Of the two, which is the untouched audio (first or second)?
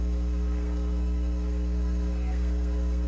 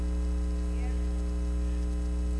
second